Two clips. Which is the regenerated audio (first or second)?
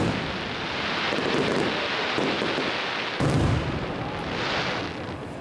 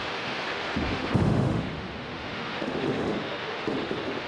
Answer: second